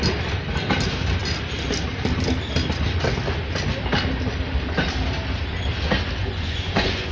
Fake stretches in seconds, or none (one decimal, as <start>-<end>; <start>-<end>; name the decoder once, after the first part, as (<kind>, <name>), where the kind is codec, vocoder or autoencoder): 6.2-7.1 (vocoder, Vocos)